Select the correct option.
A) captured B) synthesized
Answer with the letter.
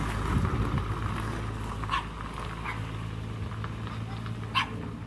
A